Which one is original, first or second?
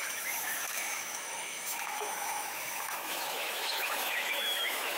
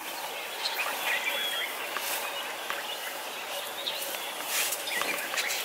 second